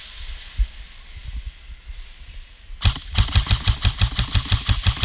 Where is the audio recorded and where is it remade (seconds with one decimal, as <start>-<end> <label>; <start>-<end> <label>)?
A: 0.0-5.0 recorded